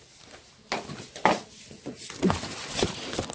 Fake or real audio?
real